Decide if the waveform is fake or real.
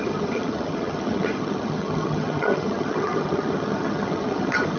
fake